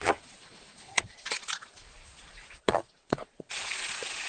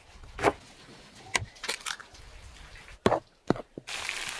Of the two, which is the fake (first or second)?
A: first